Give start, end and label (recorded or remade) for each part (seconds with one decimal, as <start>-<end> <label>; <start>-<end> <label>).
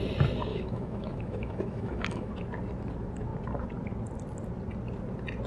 0.0-0.5 recorded; 0.5-2.3 remade; 2.3-5.5 recorded